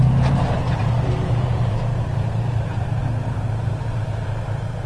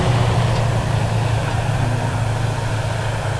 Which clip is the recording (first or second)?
second